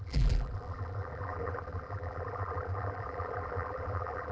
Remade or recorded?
remade